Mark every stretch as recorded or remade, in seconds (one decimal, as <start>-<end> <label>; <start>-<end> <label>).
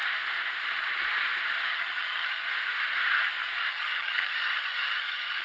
0.0-1.7 recorded; 1.7-2.4 remade; 2.4-3.7 recorded; 3.7-5.4 remade